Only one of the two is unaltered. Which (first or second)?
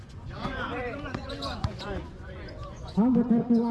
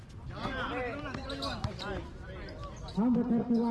second